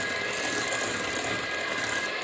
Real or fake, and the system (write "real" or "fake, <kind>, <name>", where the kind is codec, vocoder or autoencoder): real